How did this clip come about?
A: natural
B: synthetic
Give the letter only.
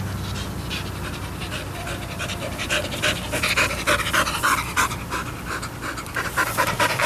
A